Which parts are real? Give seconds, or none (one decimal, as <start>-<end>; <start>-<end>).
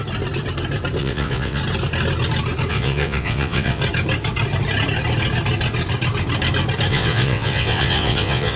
0.0-1.0; 1.6-2.7; 3.8-6.9